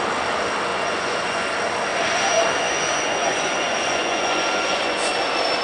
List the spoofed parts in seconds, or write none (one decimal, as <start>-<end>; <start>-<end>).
0.7-1.5; 1.9-5.1